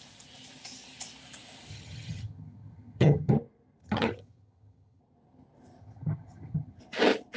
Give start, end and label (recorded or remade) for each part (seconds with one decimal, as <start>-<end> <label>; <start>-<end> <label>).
0.0-1.7 recorded; 1.7-3.3 remade; 3.3-3.8 recorded; 3.8-5.0 remade; 5.0-5.8 recorded; 5.8-6.8 remade; 6.8-7.4 recorded